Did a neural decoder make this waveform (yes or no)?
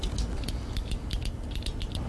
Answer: yes